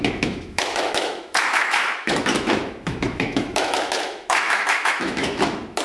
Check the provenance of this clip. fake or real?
fake